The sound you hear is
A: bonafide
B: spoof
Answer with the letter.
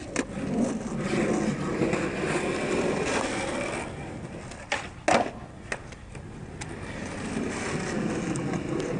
A